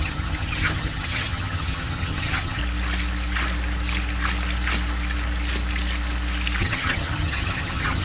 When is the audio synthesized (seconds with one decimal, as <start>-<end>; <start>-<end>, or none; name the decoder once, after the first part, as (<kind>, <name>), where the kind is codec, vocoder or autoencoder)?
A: 0.0-2.6 (vocoder, HiFi-GAN); 6.6-8.0